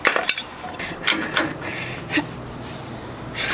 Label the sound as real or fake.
real